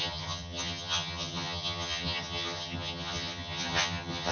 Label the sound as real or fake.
fake